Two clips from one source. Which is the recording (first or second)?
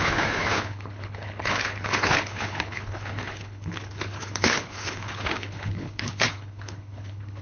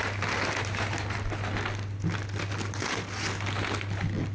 second